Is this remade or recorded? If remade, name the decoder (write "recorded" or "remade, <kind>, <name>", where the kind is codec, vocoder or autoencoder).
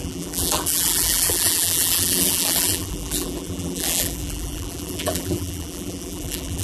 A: remade, vocoder, BigVGAN v2